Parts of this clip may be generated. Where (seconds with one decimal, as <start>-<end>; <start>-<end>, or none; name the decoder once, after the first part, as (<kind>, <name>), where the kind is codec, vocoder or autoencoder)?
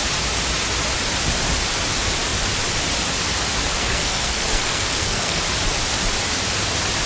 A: 3.8-5.4 (codec, SNAC)